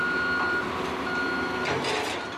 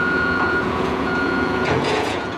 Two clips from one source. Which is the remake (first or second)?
second